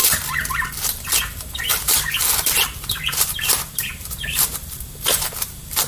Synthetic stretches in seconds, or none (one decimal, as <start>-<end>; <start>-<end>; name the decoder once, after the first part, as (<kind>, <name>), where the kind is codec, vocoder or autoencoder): 1.6-5.9 (vocoder, BigVGAN v2)